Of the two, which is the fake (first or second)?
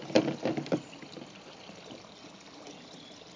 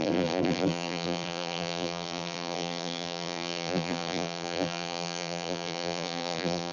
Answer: second